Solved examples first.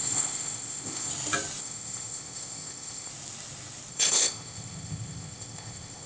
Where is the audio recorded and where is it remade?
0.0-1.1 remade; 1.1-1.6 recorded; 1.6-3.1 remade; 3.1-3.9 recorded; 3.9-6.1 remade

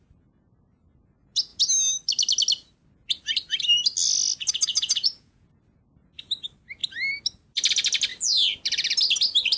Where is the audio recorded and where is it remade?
0.0-4.7 recorded; 4.7-5.6 remade; 5.6-9.6 recorded

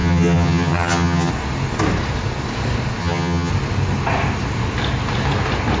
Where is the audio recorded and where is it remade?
0.0-1.3 remade; 1.3-3.0 recorded; 3.0-3.5 remade; 3.5-5.8 recorded

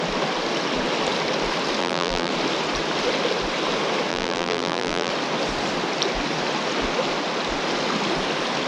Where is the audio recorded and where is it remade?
0.0-1.8 recorded; 1.8-2.3 remade; 2.3-4.1 recorded; 4.1-5.1 remade; 5.1-8.7 recorded

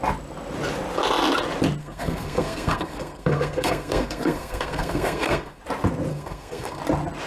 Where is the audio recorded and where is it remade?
0.0-1.8 recorded; 1.8-5.6 remade; 5.6-6.1 recorded; 6.1-6.8 remade; 6.8-7.3 recorded

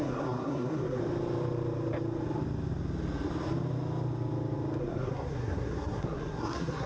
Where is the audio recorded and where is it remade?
0.0-1.0 remade; 1.0-4.8 recorded; 4.8-6.9 remade

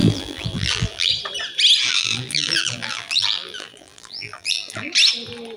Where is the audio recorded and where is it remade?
0.0-1.1 remade; 1.1-1.9 recorded; 1.9-4.9 remade; 4.9-5.6 recorded